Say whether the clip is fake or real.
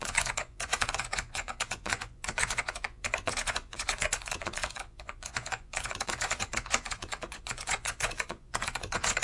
fake